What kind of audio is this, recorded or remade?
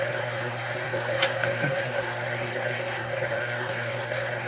remade